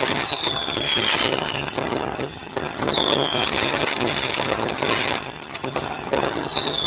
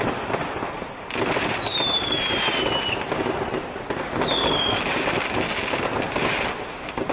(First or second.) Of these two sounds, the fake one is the first